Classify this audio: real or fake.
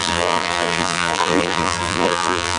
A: fake